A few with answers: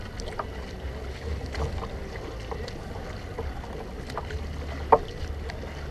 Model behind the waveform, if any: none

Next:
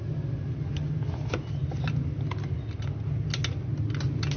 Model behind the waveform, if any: none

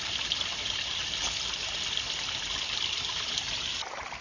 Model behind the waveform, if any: none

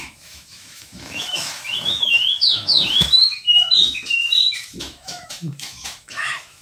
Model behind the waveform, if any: autoencoder, DAC-VAE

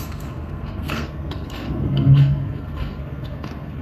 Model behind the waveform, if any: codec, SNAC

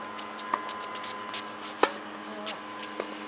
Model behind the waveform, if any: none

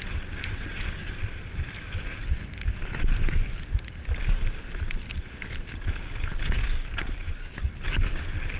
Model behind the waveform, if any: none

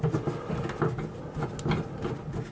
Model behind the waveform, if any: none